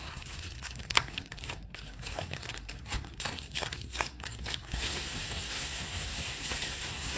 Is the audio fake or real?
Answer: fake